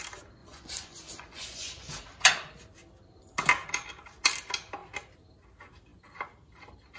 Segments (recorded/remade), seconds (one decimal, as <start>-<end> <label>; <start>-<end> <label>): 0.0-0.4 recorded; 0.4-1.9 remade; 1.9-7.0 recorded